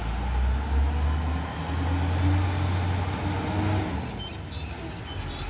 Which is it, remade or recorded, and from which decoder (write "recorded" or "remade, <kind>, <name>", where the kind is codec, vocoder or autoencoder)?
recorded